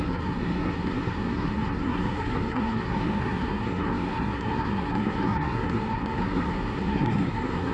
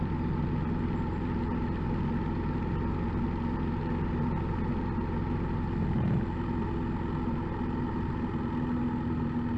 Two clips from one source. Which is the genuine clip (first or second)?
second